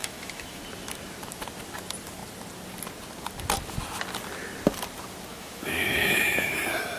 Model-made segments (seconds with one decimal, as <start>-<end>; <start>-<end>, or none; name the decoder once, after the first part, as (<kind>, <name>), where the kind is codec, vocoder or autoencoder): 0.0-0.6 (autoencoder, DAC-VAE); 5.3-6.6

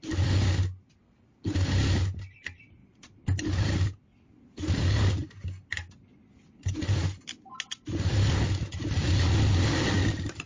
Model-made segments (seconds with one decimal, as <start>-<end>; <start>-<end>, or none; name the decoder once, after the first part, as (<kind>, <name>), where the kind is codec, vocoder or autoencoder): none

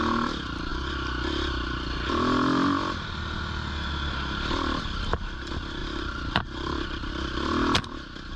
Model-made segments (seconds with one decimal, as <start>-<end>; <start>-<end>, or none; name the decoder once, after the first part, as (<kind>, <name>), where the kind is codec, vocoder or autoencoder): 5.8-7.1 (vocoder, BigVGAN v2)

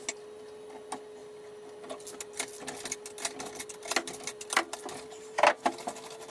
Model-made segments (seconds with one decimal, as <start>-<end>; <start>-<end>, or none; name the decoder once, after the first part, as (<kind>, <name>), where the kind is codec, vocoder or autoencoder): none

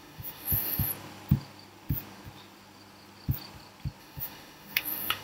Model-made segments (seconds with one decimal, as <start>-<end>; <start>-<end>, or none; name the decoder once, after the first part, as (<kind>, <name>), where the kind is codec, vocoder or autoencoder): 0.0-0.9 (autoencoder, DAC-VAE); 4.0-5.2